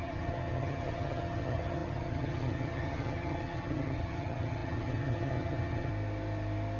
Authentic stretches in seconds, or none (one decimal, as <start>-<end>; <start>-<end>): 5.9-6.8